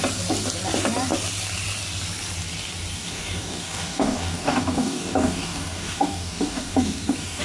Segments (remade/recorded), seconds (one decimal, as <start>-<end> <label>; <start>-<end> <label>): 0.0-2.9 recorded; 2.9-7.4 remade